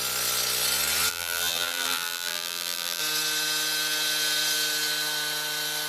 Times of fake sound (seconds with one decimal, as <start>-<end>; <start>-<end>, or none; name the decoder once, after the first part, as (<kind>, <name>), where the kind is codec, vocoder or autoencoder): 1.1-3.0 (vocoder, BigVGAN v2)